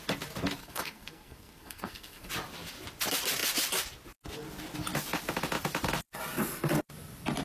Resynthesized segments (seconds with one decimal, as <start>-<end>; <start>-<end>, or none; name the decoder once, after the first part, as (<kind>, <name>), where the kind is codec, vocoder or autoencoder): 0.6-2.3 (codec, SNAC)